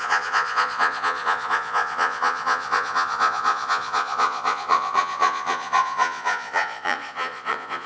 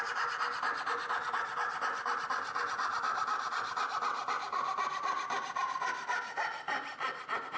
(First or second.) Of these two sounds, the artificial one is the first